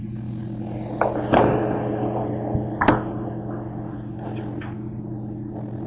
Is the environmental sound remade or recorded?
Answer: recorded